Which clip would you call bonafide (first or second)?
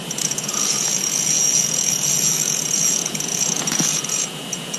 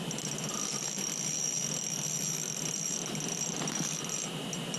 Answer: second